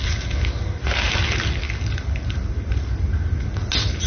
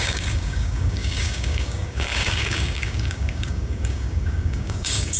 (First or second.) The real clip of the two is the first